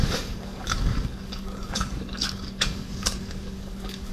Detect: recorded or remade remade